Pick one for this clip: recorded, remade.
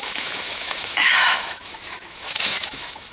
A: remade